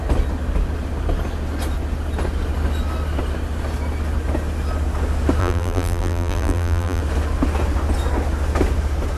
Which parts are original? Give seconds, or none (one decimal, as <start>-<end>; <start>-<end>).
0.0-5.4; 7.0-9.2